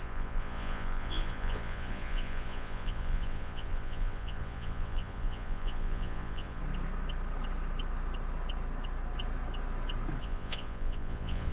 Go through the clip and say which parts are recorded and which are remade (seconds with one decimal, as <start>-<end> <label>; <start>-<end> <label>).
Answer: 0.0-6.6 remade; 6.6-10.2 recorded; 10.2-11.5 remade